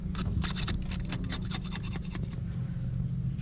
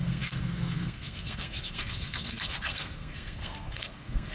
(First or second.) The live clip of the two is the first